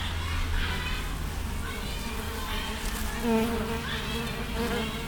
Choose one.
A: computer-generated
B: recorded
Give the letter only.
B